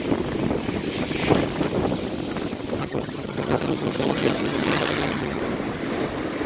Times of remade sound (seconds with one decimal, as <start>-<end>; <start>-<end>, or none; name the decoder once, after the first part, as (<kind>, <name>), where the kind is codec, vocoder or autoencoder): 2.8-5.4 (vocoder, HiFi-GAN)